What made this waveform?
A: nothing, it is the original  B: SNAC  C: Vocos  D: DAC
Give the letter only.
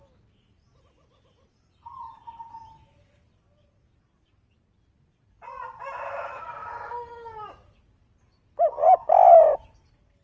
A